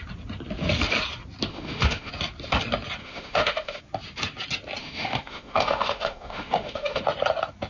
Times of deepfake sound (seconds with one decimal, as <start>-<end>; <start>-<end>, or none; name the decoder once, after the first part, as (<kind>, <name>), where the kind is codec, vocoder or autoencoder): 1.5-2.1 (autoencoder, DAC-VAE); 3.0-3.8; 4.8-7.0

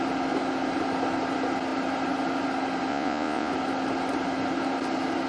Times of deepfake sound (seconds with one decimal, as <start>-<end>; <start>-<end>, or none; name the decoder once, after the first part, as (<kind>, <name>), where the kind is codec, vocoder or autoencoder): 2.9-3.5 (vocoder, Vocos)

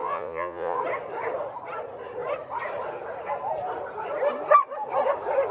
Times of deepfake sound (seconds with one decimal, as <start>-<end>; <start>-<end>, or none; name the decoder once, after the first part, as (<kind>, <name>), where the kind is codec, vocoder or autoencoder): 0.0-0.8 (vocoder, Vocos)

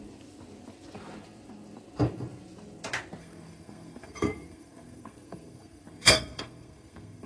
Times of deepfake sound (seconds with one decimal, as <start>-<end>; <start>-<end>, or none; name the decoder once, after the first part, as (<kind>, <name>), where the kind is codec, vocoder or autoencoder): 3.2-7.3 (codec, SNAC)

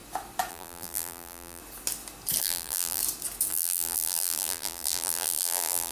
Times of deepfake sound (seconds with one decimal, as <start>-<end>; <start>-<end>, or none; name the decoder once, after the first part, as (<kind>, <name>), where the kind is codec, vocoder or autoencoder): 0.5-1.6 (vocoder, BigVGAN v2); 2.4-3.0; 3.5-5.9

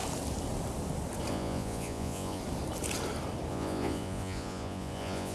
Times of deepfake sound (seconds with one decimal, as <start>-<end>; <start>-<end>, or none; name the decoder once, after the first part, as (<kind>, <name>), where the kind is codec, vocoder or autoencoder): 1.3-2.4 (vocoder, Vocos); 3.5-5.3